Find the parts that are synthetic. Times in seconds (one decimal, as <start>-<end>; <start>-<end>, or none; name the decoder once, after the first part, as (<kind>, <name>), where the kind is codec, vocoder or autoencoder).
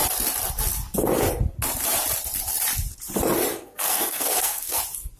3.5-4.8 (codec, SNAC)